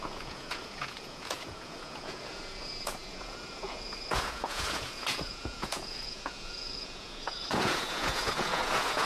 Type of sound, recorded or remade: remade